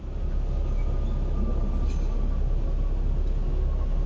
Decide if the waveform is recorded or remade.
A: recorded